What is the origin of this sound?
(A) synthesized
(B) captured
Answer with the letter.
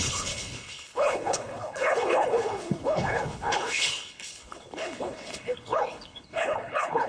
A